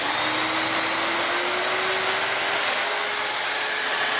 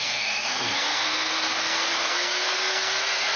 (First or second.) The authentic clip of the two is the first